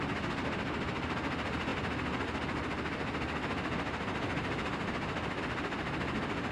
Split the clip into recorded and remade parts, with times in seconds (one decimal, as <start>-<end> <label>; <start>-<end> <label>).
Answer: 0.0-6.5 recorded

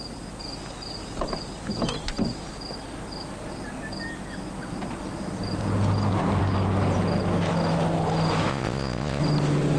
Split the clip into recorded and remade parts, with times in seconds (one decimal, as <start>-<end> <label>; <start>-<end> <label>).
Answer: 0.0-8.5 recorded; 8.5-9.2 remade; 9.2-9.8 recorded

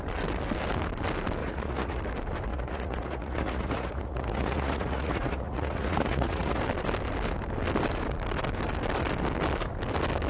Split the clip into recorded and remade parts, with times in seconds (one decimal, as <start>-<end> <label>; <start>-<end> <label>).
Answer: 0.0-1.4 recorded; 1.4-2.0 remade; 2.0-2.5 recorded; 2.5-6.6 remade; 6.6-10.3 recorded